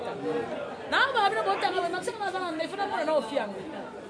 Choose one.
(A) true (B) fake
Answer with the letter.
A